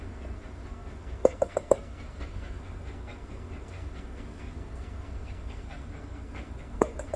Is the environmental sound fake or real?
fake